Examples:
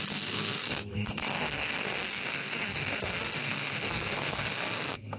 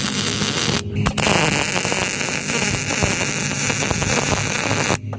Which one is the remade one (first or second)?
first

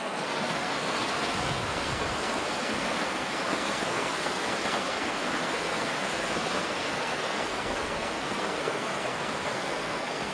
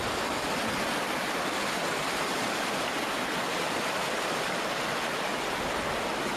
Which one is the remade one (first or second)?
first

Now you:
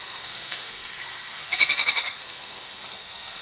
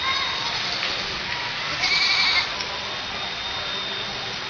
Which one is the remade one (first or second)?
first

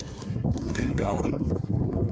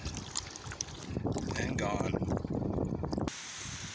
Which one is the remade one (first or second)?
first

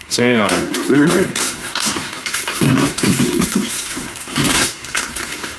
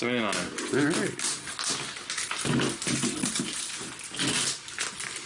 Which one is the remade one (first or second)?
first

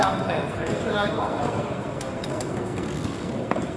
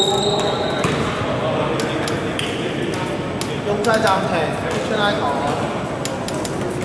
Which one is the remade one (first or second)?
first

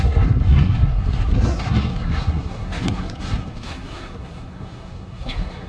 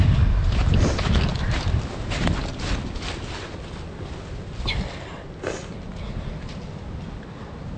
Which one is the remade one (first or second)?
first